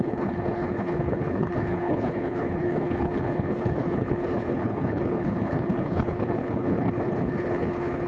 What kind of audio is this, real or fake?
fake